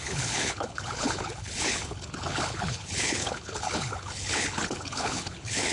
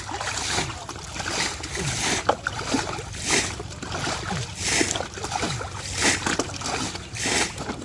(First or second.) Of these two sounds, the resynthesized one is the first